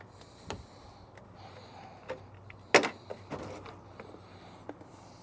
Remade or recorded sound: recorded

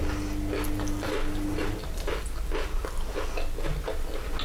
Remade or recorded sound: recorded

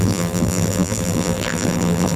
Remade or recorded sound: remade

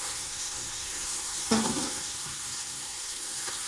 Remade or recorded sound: remade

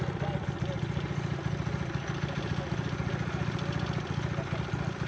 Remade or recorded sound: recorded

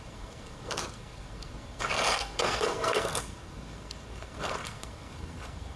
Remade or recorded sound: remade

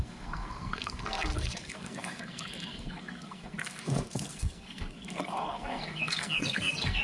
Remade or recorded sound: remade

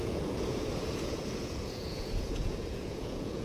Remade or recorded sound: remade